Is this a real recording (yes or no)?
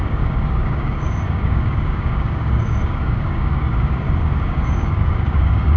no